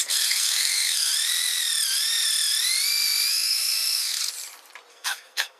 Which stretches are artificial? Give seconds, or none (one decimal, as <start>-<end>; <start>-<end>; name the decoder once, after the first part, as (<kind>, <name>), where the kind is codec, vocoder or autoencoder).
0.0-1.1 (codec, SNAC); 3.3-4.2; 4.9-5.6